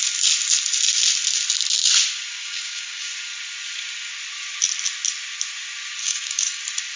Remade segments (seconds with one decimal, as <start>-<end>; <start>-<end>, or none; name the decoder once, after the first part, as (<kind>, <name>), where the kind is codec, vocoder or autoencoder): 2.4-3.1 (codec, DAC); 6.0-6.6